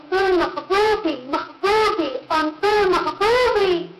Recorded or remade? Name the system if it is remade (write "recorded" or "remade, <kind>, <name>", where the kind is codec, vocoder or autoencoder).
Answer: remade, vocoder, Vocos